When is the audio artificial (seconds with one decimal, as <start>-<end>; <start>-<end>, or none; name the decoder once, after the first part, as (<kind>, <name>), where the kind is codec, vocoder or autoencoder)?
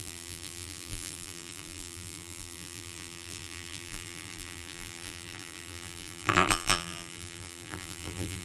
0.0-8.4 (vocoder, BigVGAN v2)